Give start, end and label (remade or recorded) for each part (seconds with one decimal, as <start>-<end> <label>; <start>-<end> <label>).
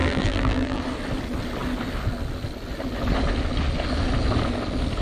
0.0-0.8 remade; 0.8-5.0 recorded